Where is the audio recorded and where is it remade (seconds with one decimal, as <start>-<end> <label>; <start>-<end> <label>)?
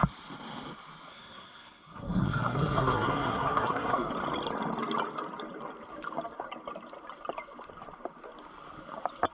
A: 0.0-1.1 recorded; 1.1-4.1 remade; 4.1-9.3 recorded